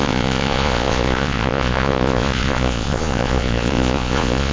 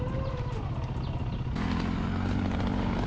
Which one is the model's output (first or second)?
first